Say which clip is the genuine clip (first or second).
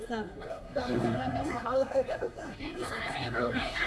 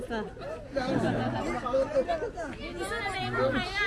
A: second